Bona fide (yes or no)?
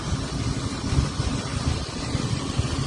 yes